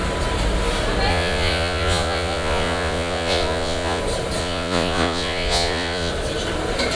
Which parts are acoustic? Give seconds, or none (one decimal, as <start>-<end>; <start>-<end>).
0.0-1.1; 4.0-4.4; 6.1-7.0

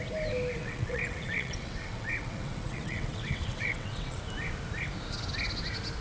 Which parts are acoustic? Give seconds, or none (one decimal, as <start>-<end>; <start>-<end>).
0.0-0.6; 4.2-6.0

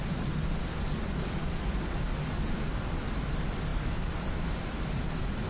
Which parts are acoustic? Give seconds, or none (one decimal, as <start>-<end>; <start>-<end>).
0.0-5.5

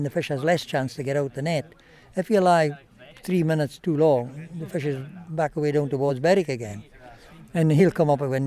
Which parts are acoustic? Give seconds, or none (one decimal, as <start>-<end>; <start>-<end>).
0.0-5.0; 6.1-6.7; 7.8-8.5

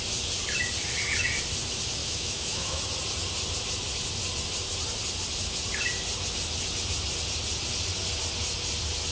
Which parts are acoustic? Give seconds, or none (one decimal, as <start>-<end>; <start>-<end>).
0.0-2.0; 2.8-9.1

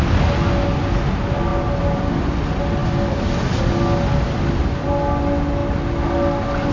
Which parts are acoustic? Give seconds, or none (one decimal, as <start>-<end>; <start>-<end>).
0.0-6.7